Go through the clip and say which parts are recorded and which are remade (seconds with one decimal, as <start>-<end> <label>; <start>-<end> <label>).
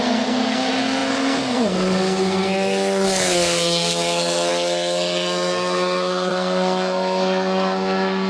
0.0-8.3 remade